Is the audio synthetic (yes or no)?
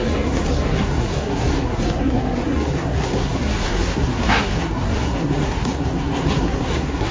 yes